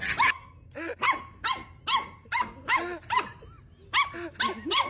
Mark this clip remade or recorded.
recorded